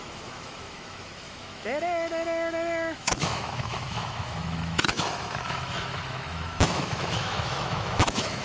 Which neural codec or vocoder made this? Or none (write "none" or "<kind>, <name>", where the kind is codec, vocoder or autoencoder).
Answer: autoencoder, DAC-VAE